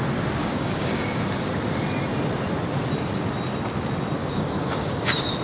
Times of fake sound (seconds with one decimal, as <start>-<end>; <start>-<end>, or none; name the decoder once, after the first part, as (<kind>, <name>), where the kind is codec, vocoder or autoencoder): 0.4-1.2 (codec, DAC); 4.2-4.9